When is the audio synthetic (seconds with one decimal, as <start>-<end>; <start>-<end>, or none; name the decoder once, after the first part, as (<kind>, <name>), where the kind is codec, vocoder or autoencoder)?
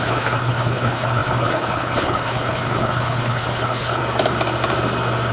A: 0.0-4.0 (codec, HILCodec)